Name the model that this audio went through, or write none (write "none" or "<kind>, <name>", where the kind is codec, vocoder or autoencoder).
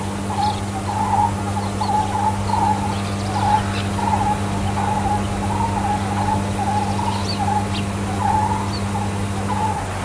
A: none